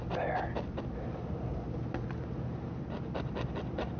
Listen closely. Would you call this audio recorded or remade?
recorded